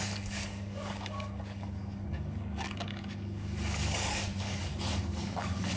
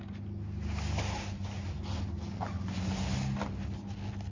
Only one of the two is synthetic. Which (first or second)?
first